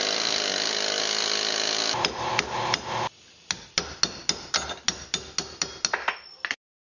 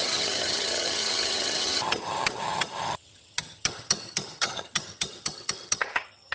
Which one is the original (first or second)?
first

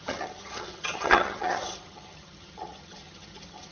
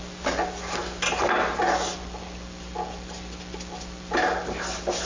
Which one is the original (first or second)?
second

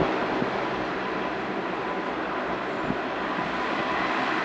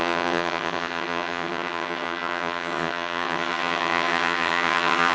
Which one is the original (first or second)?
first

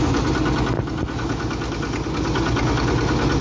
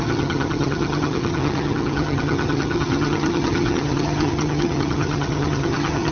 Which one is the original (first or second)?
first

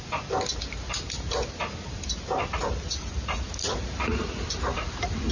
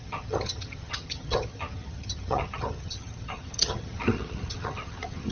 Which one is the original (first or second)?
first